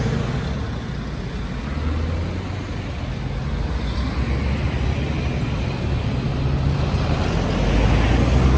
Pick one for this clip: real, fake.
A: real